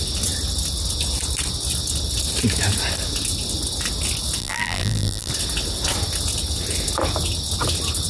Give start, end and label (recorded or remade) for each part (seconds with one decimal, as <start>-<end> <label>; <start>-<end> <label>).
0.0-4.4 recorded; 4.4-5.3 remade; 5.3-8.1 recorded